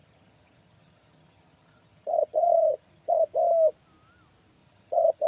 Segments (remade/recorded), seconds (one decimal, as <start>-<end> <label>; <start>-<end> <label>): 0.0-3.2 remade; 3.2-4.6 recorded; 4.6-5.3 remade